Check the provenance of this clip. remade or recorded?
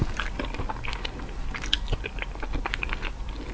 recorded